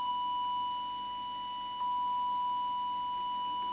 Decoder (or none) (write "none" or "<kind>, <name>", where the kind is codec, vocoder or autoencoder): none